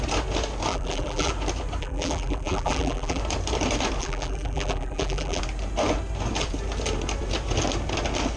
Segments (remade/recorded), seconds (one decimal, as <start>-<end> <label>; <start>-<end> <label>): 0.0-0.7 recorded; 0.7-1.3 remade; 1.3-1.8 recorded; 1.8-3.2 remade; 3.2-4.0 recorded; 4.0-5.4 remade; 5.4-8.4 recorded